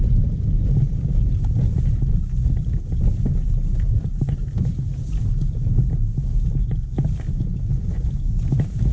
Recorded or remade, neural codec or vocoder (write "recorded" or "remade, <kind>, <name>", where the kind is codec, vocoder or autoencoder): recorded